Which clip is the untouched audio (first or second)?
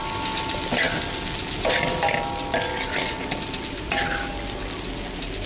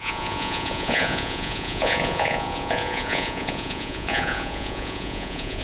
first